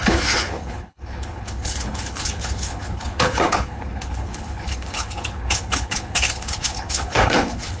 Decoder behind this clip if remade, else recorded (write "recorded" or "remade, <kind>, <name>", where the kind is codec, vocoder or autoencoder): remade, codec, HILCodec